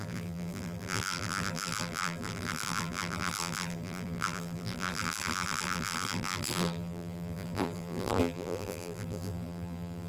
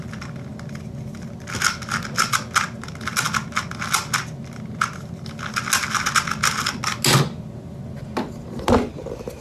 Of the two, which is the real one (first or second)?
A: second